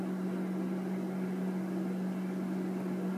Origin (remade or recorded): recorded